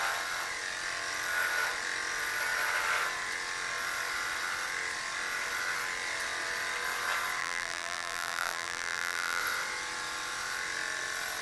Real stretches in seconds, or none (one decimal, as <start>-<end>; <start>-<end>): 0.0-7.4; 9.4-11.4